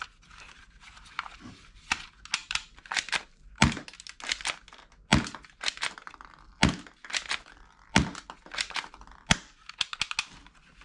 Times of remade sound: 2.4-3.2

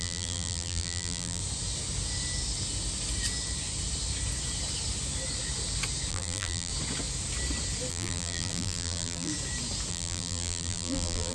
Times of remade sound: 0.0-1.4; 6.1-6.7; 7.9-9.3; 9.9-11.3

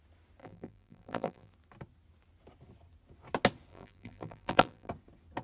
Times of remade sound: 0.4-1.5; 3.7-4.9